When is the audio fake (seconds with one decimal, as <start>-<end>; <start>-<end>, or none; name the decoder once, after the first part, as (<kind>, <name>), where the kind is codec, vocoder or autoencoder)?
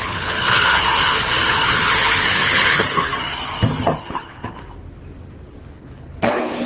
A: 0.0-3.1 (codec, HILCodec); 3.8-4.6; 5.7-6.7